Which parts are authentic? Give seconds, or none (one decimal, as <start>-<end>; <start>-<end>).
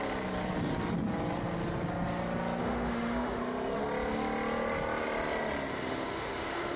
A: 0.0-2.6; 3.4-5.7